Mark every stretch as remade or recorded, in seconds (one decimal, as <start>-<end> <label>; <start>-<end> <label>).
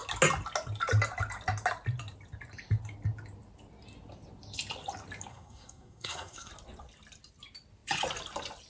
0.0-5.3 recorded; 5.3-6.5 remade; 6.5-8.7 recorded